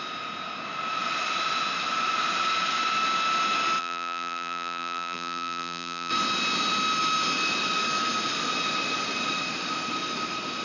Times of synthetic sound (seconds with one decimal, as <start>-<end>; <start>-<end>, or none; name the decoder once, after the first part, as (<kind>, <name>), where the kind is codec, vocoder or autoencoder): 3.8-6.1 (vocoder, BigVGAN v2)